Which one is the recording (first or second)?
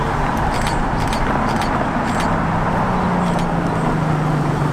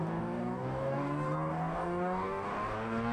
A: first